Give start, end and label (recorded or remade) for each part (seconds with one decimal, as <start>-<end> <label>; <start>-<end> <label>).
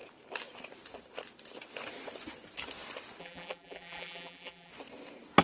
0.0-3.2 recorded; 3.2-4.7 remade; 4.7-5.4 recorded